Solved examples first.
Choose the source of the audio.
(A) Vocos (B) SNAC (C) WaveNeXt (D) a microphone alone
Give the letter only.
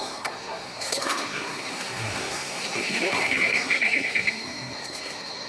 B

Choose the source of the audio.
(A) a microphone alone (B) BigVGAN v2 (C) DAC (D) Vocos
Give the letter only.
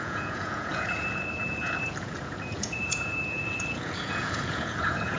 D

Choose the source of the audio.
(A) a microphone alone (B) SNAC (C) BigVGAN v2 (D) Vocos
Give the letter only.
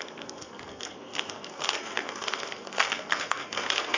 B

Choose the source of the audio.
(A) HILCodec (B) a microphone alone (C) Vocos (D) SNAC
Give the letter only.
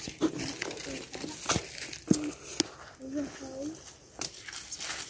B